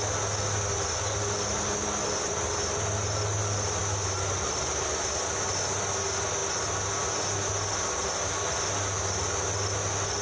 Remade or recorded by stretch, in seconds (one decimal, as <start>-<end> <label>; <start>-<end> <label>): 0.0-10.2 recorded